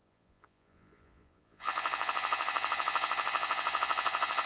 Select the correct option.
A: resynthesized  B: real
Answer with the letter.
A